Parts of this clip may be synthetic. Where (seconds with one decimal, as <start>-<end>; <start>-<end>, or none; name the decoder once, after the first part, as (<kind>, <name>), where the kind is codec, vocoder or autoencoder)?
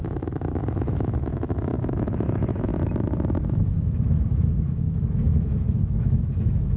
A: 0.0-2.7 (autoencoder, DAC-VAE); 3.6-6.8